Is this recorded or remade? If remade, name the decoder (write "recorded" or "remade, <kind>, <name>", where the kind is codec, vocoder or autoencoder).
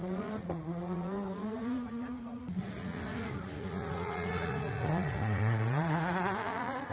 remade, vocoder, Vocos